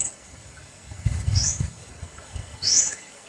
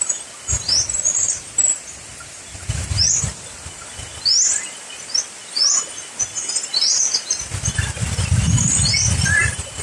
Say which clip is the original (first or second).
second